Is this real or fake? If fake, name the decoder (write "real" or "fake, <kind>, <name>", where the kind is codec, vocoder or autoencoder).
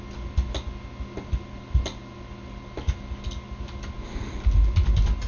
real